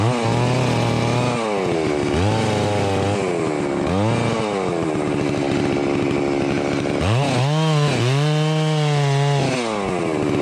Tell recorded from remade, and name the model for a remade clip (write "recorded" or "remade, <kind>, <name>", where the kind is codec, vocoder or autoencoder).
recorded